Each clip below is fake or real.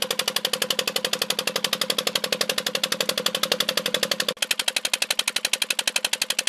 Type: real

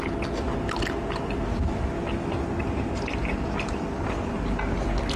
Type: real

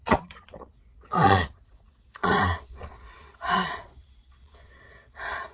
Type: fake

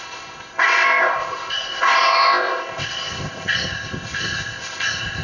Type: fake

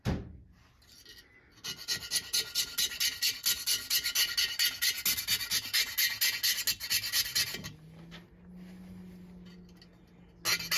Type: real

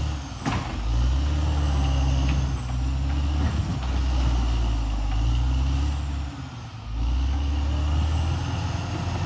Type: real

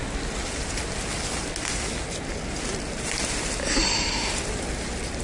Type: real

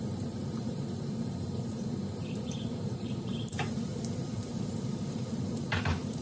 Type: fake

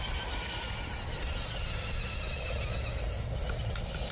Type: real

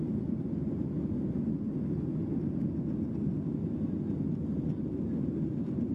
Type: real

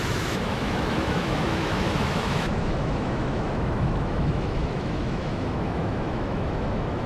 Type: fake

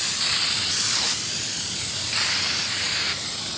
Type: fake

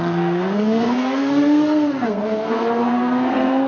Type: fake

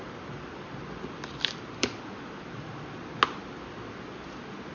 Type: real